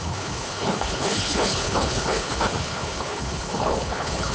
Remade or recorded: remade